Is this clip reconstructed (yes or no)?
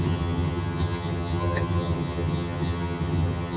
yes